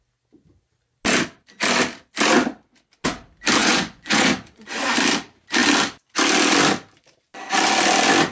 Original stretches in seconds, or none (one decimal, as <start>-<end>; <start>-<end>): 0.0-3.6; 4.7-8.3